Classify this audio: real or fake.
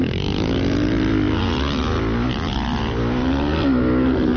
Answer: real